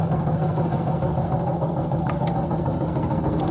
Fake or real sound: fake